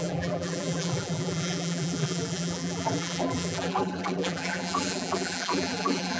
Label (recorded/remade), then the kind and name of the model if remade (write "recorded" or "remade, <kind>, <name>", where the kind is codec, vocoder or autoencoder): remade, vocoder, BigVGAN v2